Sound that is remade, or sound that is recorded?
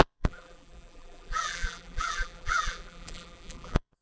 remade